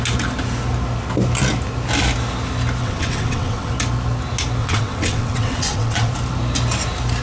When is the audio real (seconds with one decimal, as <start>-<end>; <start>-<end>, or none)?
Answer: 0.0-2.8; 3.7-4.6; 6.1-7.2